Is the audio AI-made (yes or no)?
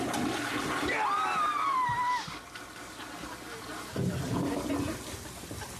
no